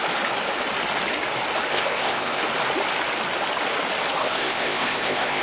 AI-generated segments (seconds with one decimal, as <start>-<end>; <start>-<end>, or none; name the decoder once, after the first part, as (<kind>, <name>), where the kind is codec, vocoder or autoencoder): 1.7-2.4 (codec, ZipCodec); 4.2-5.4